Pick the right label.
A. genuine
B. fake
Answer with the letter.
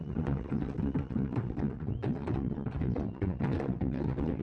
B